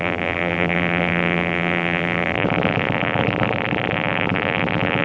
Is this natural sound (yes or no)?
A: no